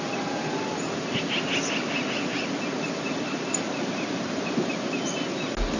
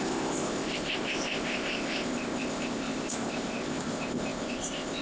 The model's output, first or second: second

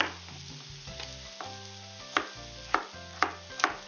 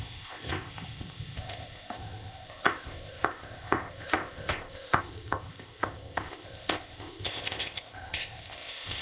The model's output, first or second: second